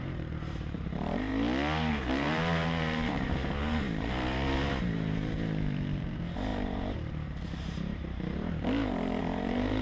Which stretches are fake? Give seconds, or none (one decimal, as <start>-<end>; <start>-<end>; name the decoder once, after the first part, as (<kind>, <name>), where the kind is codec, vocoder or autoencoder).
0.0-1.3 (vocoder, BigVGAN v2); 1.9-9.8